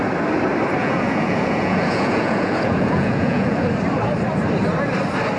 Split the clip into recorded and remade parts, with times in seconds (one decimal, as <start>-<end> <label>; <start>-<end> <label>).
0.0-0.8 recorded; 0.8-3.6 remade; 3.6-5.4 recorded